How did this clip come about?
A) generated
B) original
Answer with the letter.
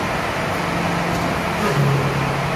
B